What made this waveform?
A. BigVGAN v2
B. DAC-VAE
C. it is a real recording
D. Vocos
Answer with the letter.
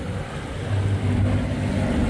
C